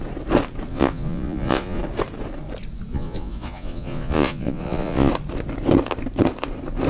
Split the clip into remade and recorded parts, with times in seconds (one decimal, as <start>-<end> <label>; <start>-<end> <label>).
0.0-0.7 recorded; 0.7-1.8 remade; 1.8-2.9 recorded; 2.9-5.1 remade; 5.1-6.9 recorded